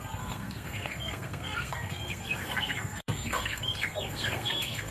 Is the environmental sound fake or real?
fake